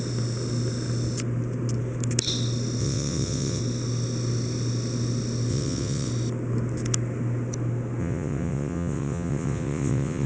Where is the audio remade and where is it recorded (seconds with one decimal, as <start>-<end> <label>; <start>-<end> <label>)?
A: 0.0-2.8 recorded; 2.8-3.6 remade; 3.6-5.5 recorded; 5.5-6.1 remade; 6.1-8.0 recorded; 8.0-10.3 remade